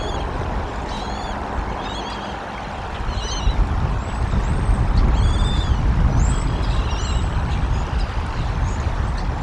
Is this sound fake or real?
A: real